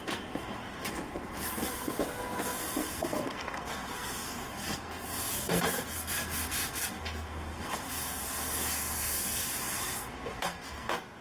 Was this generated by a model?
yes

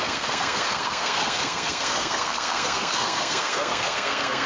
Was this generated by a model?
yes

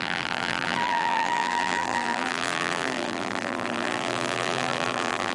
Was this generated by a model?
yes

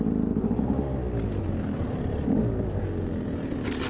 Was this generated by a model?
no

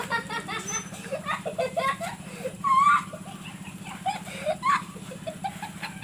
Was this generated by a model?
yes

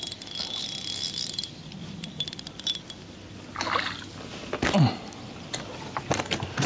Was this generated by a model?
no